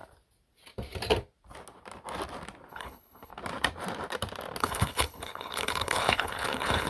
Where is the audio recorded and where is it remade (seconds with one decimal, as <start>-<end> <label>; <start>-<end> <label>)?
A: 0.0-2.7 recorded; 2.7-3.3 remade; 3.3-4.6 recorded; 4.6-6.9 remade